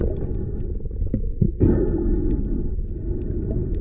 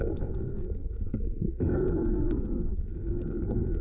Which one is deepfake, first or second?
second